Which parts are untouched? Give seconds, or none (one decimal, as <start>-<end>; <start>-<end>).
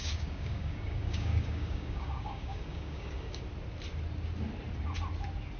3.4-5.6